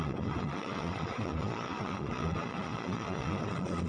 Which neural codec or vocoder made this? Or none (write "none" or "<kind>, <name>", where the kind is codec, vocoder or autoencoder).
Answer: vocoder, Vocos